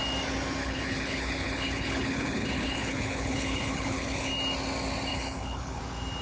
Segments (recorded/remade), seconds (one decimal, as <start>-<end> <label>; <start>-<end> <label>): 0.0-0.6 recorded; 0.6-4.3 remade; 4.3-5.1 recorded; 5.1-5.8 remade; 5.8-6.2 recorded